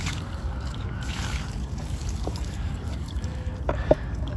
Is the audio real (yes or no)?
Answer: no